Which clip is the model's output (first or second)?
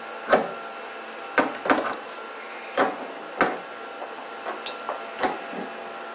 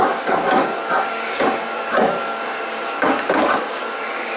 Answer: second